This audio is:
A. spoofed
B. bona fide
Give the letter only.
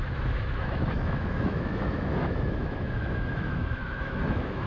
A